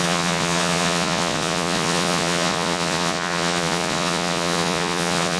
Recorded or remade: remade